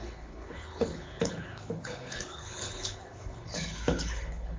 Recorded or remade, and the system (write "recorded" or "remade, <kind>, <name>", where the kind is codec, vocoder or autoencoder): remade, codec, HILCodec